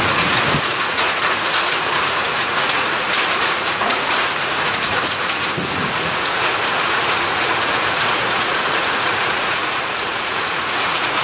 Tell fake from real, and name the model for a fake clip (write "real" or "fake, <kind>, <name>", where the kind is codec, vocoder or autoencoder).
fake, vocoder, Vocos